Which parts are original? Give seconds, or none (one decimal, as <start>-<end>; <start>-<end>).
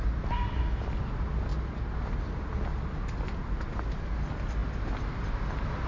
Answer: 0.0-5.9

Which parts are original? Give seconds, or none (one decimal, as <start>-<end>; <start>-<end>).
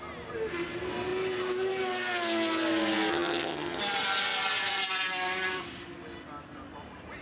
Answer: 0.0-3.1; 3.8-7.2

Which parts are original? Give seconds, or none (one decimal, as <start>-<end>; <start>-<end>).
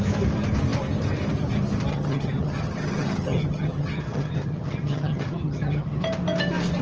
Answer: 0.0-1.9; 6.0-6.8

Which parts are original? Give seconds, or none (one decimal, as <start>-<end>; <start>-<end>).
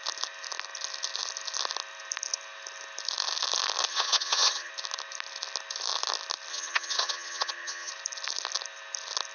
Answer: 0.0-3.9; 4.7-6.5; 7.9-9.3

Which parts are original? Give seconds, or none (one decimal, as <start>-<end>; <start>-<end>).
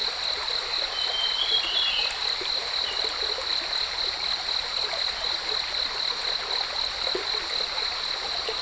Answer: 0.0-8.6